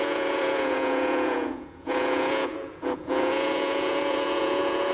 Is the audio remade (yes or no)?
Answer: yes